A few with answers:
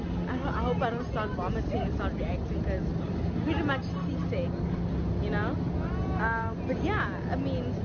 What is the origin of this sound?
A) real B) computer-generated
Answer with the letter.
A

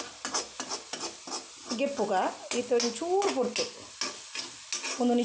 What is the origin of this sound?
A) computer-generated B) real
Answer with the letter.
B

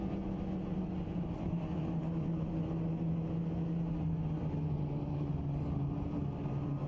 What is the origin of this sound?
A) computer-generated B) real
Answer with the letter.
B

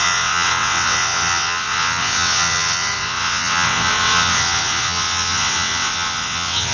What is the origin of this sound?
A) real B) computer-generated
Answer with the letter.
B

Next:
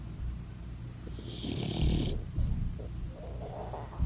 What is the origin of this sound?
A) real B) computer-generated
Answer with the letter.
A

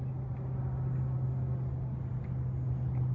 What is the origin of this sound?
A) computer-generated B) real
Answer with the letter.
B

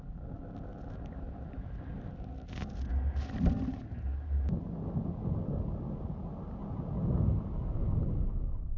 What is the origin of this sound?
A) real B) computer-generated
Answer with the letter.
A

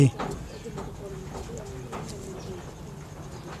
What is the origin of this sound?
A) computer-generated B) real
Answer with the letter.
B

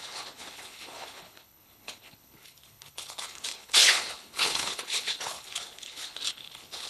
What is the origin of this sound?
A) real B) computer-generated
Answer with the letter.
B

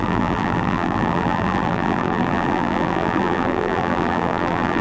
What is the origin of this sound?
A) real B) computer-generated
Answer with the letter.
B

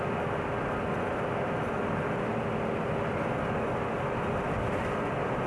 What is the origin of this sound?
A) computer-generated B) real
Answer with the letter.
B